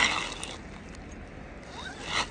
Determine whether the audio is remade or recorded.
recorded